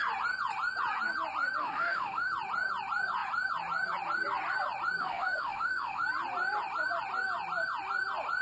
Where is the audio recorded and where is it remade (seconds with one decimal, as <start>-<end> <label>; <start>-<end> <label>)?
0.0-1.6 recorded; 1.6-2.3 remade; 2.3-5.0 recorded; 5.0-6.0 remade; 6.0-8.4 recorded